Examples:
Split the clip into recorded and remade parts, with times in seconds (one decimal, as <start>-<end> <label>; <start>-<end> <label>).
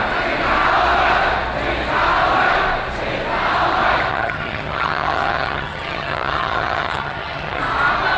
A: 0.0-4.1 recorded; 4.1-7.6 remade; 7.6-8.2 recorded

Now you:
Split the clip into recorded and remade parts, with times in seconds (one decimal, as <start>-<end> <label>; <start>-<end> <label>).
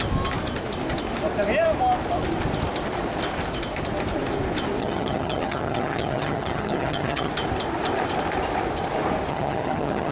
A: 0.0-4.8 recorded; 4.8-7.3 remade; 7.3-9.3 recorded; 9.3-10.1 remade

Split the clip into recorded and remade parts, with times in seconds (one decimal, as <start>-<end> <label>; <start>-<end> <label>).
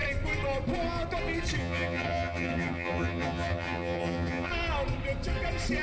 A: 0.0-1.6 recorded; 1.6-4.5 remade; 4.5-5.8 recorded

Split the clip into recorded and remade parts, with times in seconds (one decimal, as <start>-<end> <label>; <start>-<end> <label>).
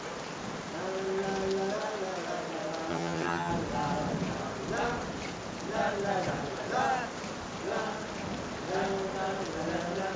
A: 0.0-2.9 recorded; 2.9-3.5 remade; 3.5-10.2 recorded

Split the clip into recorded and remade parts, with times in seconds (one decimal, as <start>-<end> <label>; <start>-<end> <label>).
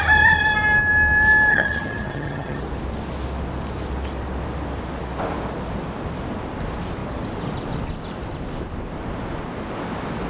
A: 0.0-1.5 recorded; 1.5-2.6 remade; 2.6-10.3 recorded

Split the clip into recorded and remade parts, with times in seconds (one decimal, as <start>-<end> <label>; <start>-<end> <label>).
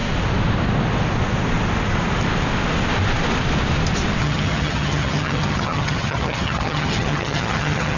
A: 0.0-4.2 recorded; 4.2-8.0 remade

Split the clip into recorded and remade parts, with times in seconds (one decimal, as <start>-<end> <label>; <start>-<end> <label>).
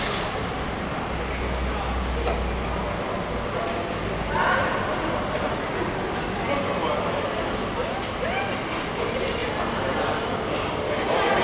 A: 0.0-11.4 recorded